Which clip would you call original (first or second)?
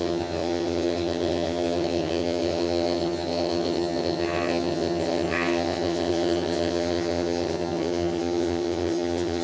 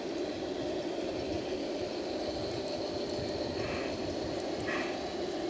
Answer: second